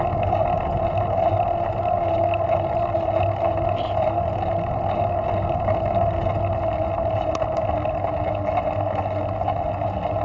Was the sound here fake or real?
real